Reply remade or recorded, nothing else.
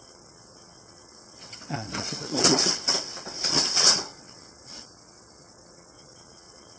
remade